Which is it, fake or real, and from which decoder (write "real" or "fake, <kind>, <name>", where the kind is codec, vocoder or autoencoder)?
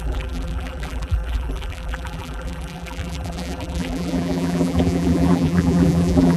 fake, vocoder, BigVGAN v2